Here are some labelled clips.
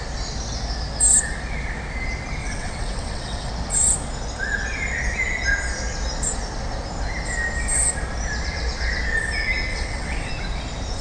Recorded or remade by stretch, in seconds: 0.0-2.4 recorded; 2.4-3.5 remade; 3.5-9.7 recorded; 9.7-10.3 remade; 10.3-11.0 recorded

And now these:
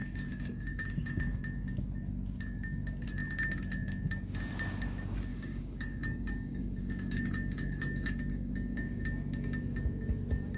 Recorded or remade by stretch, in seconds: 0.0-1.4 remade; 1.4-5.3 recorded; 5.3-9.0 remade; 9.0-10.6 recorded

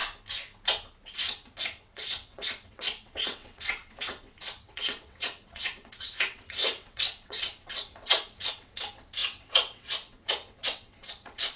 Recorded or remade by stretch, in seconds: 0.0-1.6 recorded; 1.6-11.6 remade

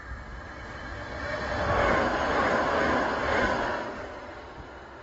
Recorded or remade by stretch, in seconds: 0.0-5.0 recorded

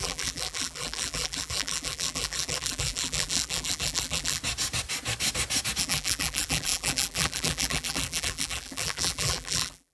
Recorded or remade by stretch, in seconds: 0.0-4.4 remade; 4.4-5.8 recorded; 5.8-9.9 remade